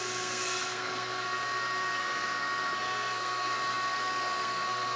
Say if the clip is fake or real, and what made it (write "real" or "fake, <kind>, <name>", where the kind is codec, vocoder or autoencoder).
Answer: fake, codec, SNAC